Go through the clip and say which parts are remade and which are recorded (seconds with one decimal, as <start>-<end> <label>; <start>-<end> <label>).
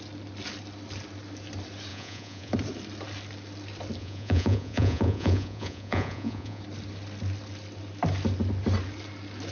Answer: 0.0-1.9 recorded; 1.9-2.5 remade; 2.5-4.0 recorded; 4.0-6.6 remade; 6.6-9.5 recorded